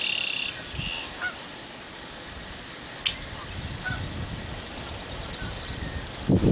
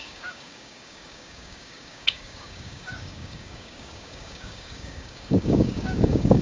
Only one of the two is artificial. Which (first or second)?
second